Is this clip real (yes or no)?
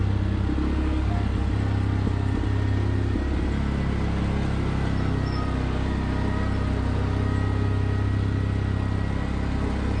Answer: yes